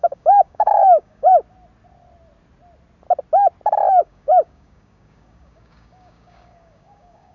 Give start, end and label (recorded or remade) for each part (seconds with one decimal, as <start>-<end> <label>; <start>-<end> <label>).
0.0-1.3 remade; 1.3-4.0 recorded; 4.0-7.3 remade